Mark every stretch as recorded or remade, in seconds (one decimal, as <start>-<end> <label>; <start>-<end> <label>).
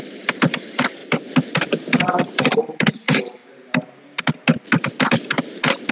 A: 0.0-1.0 remade; 1.0-2.2 recorded; 2.2-3.4 remade; 3.4-5.9 recorded